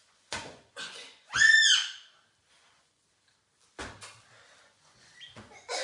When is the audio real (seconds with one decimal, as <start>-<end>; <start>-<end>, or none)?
1.8-2.5; 3.0-4.6